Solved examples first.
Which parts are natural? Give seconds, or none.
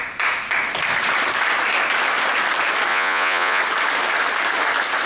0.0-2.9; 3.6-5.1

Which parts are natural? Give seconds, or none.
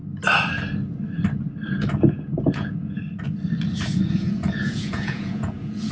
0.0-1.8; 3.0-3.8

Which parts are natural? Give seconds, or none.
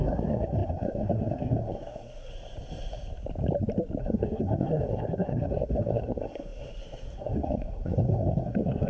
2.3-4.0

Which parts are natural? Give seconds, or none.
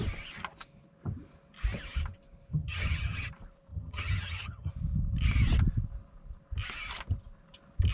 0.0-2.5; 3.3-3.7; 4.7-7.9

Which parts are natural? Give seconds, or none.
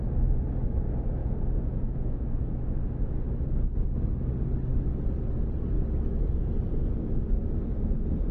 0.0-1.2; 2.6-8.3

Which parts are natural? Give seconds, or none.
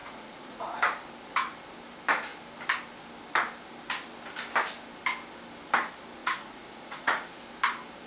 0.8-6.2; 7.4-8.1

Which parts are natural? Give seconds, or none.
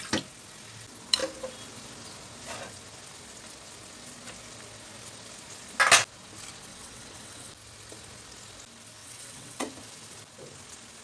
0.0-6.7; 7.5-9.0; 9.7-11.0